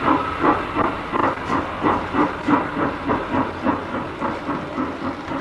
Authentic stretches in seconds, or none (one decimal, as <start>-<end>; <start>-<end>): 0.0-5.4